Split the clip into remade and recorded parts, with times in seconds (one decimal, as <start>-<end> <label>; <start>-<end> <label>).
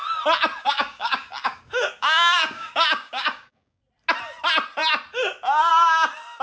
0.0-0.6 recorded; 0.6-3.8 remade; 3.8-6.4 recorded